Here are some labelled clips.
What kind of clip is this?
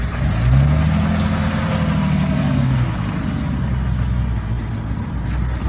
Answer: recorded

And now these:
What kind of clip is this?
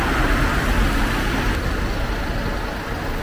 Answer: recorded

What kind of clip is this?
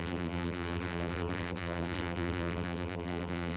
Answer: remade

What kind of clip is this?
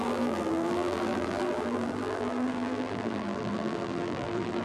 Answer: remade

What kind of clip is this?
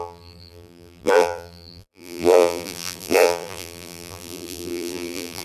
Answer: remade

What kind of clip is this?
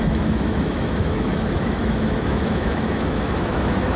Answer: remade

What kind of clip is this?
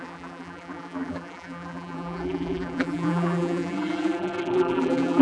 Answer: remade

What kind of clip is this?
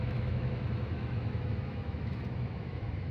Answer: remade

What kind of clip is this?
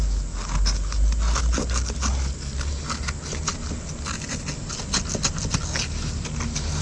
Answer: recorded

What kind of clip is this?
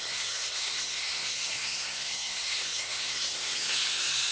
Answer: remade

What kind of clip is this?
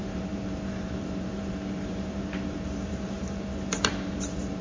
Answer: remade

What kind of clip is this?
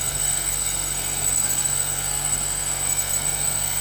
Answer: remade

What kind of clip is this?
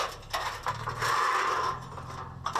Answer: recorded